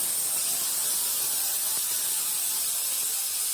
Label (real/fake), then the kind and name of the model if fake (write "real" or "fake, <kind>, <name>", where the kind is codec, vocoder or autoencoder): real